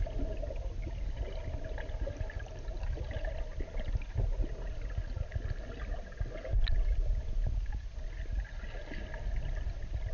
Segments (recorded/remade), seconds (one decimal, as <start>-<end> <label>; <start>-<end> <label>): 0.0-10.1 recorded